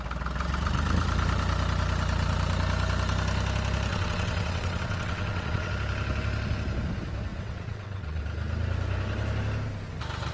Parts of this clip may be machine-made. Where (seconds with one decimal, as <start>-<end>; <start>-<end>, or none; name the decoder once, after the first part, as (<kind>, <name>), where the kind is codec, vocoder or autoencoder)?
3.9-5.7 (vocoder, WaveNeXt); 7.3-8.2